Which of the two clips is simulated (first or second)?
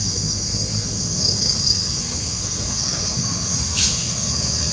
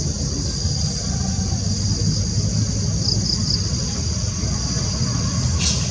first